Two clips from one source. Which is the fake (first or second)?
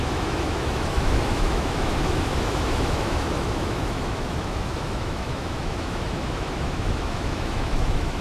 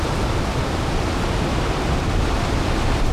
first